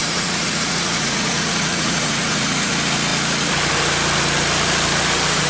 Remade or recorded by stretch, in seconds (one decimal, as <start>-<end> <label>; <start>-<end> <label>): 0.0-2.7 remade; 2.7-5.5 recorded